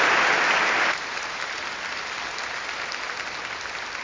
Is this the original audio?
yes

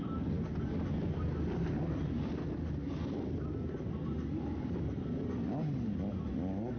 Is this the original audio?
yes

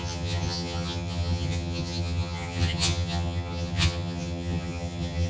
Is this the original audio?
no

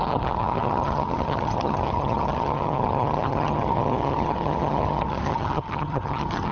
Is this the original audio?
no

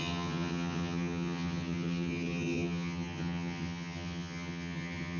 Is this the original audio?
no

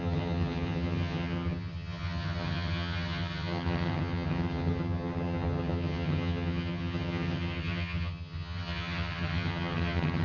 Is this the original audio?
no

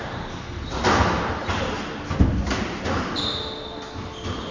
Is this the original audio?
yes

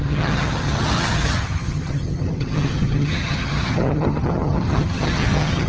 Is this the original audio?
no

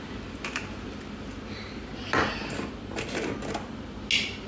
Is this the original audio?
yes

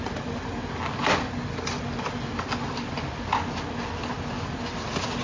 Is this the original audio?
yes